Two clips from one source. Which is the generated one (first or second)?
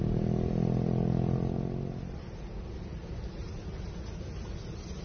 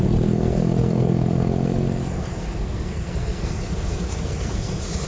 second